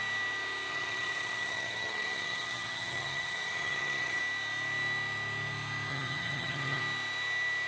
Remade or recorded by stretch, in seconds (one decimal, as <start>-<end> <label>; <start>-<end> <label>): 0.0-0.7 recorded; 0.7-4.2 remade; 4.2-5.9 recorded; 5.9-6.8 remade; 6.8-7.7 recorded